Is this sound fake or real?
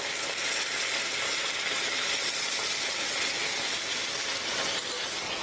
real